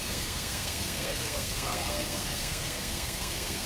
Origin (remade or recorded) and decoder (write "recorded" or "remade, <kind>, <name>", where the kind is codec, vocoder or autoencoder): remade, codec, SNAC